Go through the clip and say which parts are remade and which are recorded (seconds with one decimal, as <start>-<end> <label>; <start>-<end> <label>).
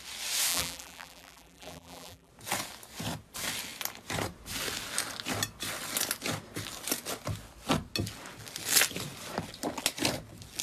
0.0-0.5 recorded; 0.5-2.3 remade; 2.3-10.6 recorded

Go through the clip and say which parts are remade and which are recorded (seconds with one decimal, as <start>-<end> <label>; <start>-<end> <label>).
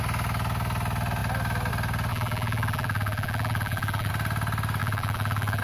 0.0-2.1 recorded; 2.1-4.1 remade; 4.1-4.8 recorded; 4.8-5.6 remade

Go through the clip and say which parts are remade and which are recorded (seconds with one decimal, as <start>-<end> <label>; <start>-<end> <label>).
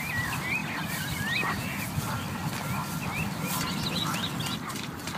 0.0-5.2 recorded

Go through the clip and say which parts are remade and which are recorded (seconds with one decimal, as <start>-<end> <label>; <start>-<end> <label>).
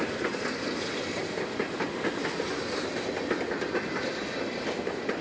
0.0-1.2 remade; 1.2-4.1 recorded; 4.1-5.2 remade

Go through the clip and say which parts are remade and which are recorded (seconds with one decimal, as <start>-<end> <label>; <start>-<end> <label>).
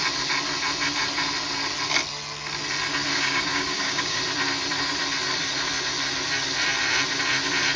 0.0-3.1 recorded; 3.1-4.2 remade; 4.2-7.8 recorded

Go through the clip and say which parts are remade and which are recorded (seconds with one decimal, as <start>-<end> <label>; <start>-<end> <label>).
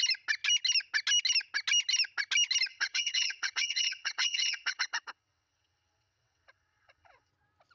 0.0-2.7 recorded; 2.7-7.3 remade; 7.3-7.7 recorded